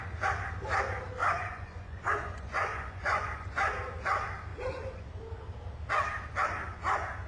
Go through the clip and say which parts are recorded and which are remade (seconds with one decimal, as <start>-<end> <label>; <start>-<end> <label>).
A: 0.0-1.2 recorded; 1.2-3.7 remade; 3.7-4.5 recorded; 4.5-5.0 remade; 5.0-7.3 recorded